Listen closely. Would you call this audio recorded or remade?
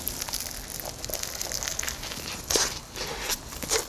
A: recorded